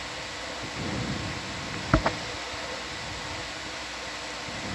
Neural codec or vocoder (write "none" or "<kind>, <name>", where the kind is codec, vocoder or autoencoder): none